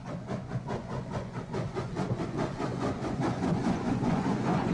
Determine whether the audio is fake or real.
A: fake